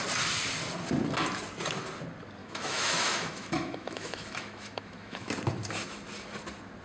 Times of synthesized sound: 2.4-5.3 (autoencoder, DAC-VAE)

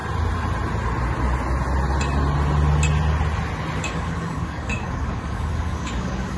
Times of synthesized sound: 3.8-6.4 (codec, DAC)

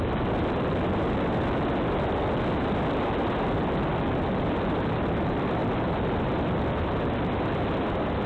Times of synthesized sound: none

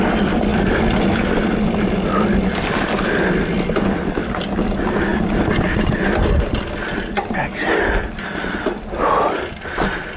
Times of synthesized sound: none

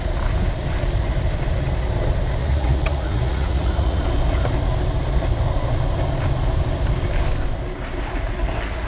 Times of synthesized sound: 2.4-4.0 (vocoder, Vocos)

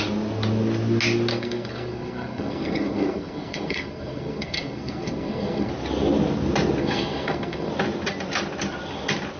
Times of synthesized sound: 1.3-5.7 (codec, SNAC); 6.8-7.7

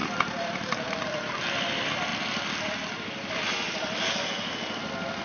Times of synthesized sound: 0.0-1.4 (vocoder, BigVGAN v2)